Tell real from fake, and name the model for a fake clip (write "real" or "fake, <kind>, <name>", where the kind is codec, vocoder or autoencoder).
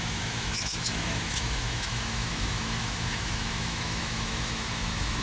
fake, autoencoder, DAC-VAE